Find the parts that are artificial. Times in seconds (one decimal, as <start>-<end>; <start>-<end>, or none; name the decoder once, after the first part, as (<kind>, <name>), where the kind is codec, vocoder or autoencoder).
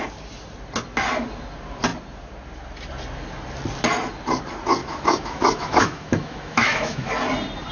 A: 4.8-7.1 (autoencoder, DAC-VAE)